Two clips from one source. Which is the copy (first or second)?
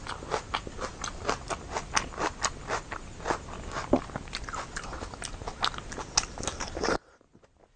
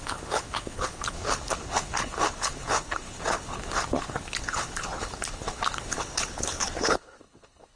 second